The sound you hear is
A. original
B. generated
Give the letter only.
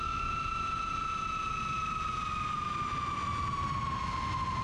A